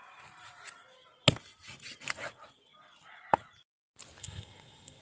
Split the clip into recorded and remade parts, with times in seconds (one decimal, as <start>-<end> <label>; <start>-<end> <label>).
0.0-4.2 recorded; 4.2-5.0 remade